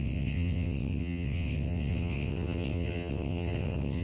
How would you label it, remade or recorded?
remade